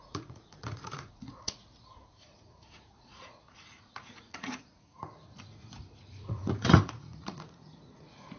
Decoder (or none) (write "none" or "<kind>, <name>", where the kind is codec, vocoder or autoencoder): vocoder, Vocos